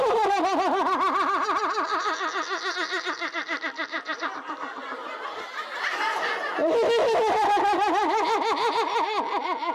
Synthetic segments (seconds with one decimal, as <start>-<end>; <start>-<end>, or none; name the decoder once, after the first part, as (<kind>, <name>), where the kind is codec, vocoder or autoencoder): 3.9-4.8 (vocoder, BigVGAN v2)